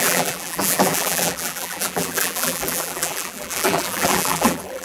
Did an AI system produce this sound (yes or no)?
yes